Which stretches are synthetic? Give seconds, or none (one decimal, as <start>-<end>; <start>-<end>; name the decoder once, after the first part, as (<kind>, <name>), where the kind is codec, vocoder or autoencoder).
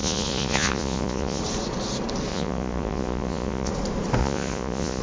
0.0-1.4 (vocoder, Vocos); 2.3-3.7; 4.2-5.0